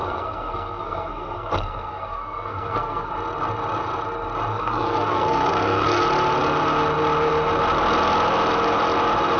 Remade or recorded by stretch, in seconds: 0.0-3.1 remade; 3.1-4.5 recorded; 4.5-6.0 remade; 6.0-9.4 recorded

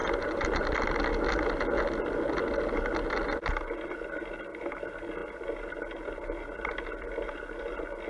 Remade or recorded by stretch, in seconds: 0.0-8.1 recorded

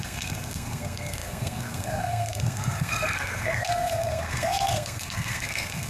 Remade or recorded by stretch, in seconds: 0.0-5.9 remade

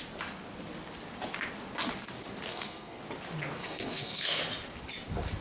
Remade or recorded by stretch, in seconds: 0.0-2.5 recorded; 2.5-3.0 remade; 3.0-3.6 recorded; 3.6-4.4 remade; 4.4-5.4 recorded

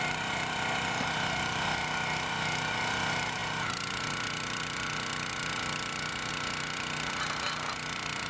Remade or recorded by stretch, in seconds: 0.0-8.3 recorded

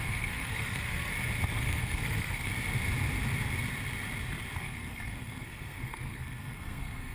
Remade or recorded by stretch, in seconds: 0.0-1.1 remade; 1.1-1.6 recorded; 1.6-2.5 remade; 2.5-4.6 recorded; 4.6-7.1 remade

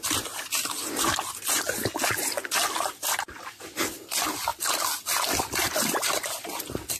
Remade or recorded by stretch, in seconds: 0.0-7.0 recorded

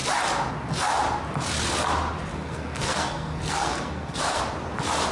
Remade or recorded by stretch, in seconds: 0.0-2.3 recorded; 2.3-4.4 remade; 4.4-5.1 recorded